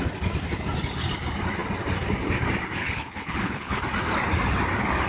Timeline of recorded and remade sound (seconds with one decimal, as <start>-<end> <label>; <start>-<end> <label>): 0.0-2.8 recorded; 2.8-3.8 remade; 3.8-5.1 recorded